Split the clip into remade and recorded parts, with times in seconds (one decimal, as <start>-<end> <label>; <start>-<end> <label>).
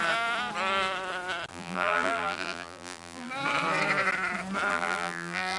0.0-1.5 recorded; 1.5-3.3 remade; 3.3-4.7 recorded; 4.7-5.6 remade